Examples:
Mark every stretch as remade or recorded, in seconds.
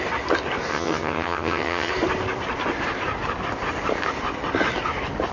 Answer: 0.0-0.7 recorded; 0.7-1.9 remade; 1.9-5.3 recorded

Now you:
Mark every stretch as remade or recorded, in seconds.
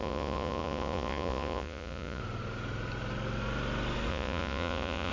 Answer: 0.0-2.2 remade; 2.2-4.1 recorded; 4.1-5.1 remade